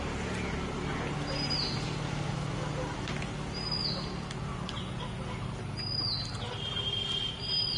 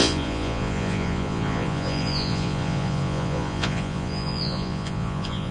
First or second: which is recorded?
first